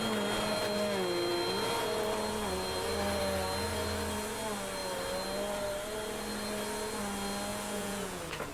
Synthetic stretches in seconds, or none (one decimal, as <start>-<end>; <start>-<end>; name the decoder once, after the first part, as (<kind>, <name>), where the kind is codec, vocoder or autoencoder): 7.5-8.5 (vocoder, Vocos)